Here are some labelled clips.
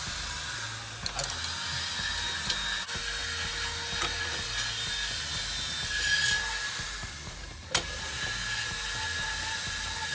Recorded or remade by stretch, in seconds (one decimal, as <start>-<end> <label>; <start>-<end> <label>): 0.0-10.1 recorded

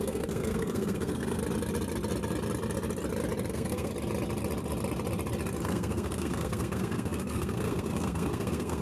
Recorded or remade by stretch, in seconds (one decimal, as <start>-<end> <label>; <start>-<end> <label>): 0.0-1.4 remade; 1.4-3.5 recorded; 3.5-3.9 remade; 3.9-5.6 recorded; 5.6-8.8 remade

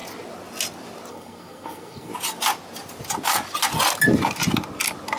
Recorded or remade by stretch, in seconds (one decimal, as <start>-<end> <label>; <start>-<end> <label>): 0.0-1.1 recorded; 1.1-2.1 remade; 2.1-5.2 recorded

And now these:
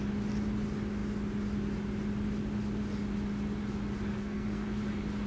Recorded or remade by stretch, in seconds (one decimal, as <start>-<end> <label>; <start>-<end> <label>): 0.0-4.1 recorded; 4.1-4.8 remade; 4.8-5.3 recorded

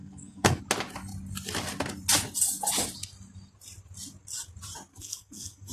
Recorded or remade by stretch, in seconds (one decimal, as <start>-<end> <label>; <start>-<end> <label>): 0.0-0.6 remade; 0.6-4.9 recorded; 4.9-5.7 remade

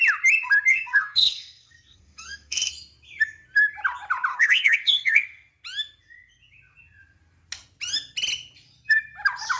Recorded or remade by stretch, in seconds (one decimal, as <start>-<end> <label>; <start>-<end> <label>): 0.0-0.7 recorded; 0.7-2.7 remade; 2.7-4.3 recorded; 4.3-5.5 remade; 5.5-9.6 recorded

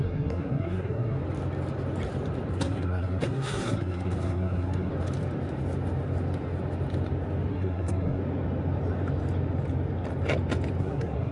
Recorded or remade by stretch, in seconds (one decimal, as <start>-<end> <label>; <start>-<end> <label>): 0.0-1.2 remade; 1.2-2.5 recorded; 2.5-4.9 remade; 4.9-7.5 recorded; 7.5-8.2 remade; 8.2-10.8 recorded; 10.8-11.3 remade

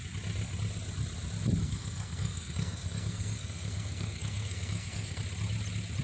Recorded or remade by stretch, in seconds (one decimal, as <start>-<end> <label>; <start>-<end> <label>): 0.0-1.6 recorded; 1.6-5.2 remade; 5.2-6.0 recorded